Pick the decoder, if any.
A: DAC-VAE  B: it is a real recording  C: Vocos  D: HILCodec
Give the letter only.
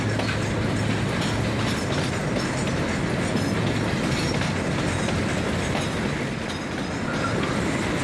B